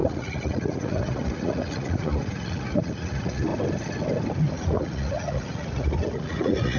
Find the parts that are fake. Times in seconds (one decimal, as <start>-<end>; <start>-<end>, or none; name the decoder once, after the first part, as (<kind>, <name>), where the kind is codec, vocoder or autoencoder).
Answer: 0.0-3.5 (vocoder, Vocos); 4.5-6.8